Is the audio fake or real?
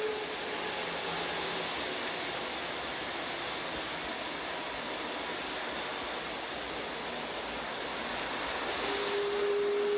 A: real